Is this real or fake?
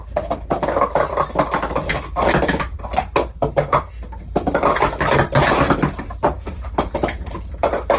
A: real